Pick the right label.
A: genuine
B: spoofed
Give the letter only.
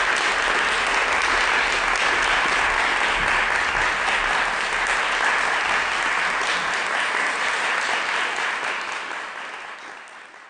A